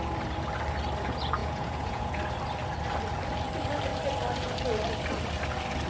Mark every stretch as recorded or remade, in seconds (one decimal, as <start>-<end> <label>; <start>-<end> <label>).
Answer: 0.0-1.4 recorded; 1.4-2.2 remade; 2.2-5.9 recorded